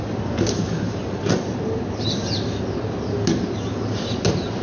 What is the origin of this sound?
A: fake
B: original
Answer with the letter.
B